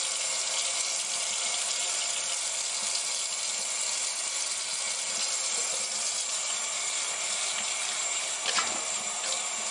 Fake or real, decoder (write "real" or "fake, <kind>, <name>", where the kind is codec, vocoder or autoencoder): real